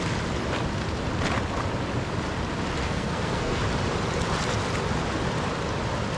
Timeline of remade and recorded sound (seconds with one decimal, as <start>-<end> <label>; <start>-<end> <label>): 0.0-2.8 recorded; 2.8-3.6 remade; 3.6-6.2 recorded

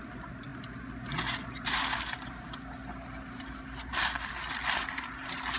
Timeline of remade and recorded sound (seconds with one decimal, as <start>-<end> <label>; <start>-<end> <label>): 0.0-5.6 recorded